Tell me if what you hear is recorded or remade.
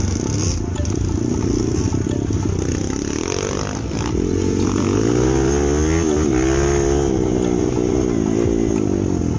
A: recorded